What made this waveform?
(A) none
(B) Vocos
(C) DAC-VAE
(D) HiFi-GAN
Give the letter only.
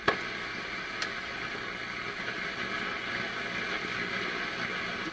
A